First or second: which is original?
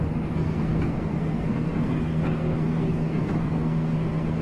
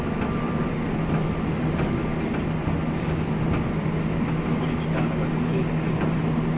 second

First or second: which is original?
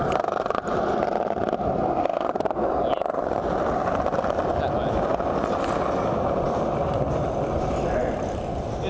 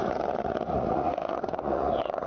first